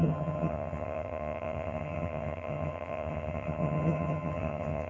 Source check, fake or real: fake